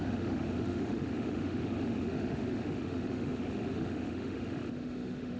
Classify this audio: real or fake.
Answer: fake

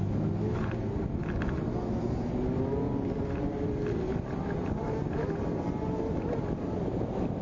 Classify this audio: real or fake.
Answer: real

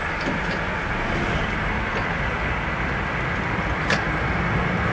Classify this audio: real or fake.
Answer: real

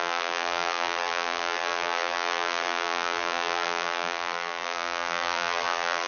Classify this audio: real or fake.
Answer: fake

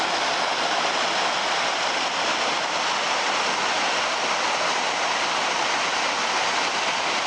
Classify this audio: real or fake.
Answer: real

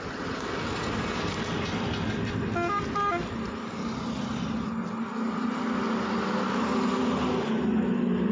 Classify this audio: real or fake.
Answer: real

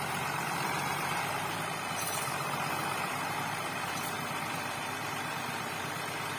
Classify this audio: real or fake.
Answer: fake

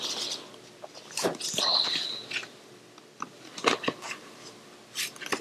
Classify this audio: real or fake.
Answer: real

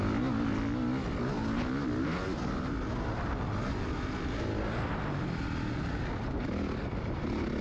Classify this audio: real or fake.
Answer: real